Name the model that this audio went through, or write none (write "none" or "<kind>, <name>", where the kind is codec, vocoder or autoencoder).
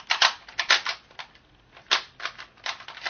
none